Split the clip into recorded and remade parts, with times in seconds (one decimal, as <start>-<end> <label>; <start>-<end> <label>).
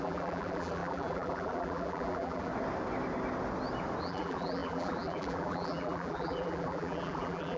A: 0.0-2.5 remade; 2.5-4.0 recorded; 4.0-7.6 remade